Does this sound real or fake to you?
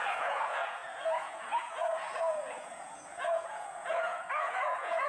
fake